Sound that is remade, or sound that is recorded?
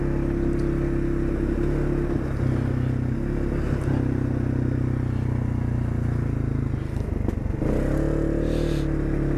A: recorded